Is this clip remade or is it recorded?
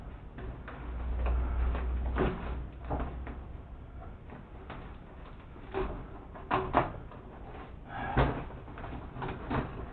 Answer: recorded